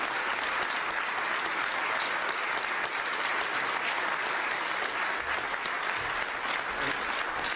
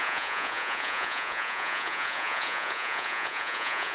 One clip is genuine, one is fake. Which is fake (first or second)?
second